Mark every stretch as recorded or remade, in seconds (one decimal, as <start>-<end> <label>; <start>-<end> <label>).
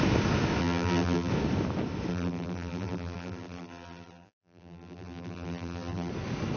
0.0-0.6 recorded; 0.6-1.3 remade; 1.3-2.1 recorded; 2.1-6.1 remade; 6.1-6.6 recorded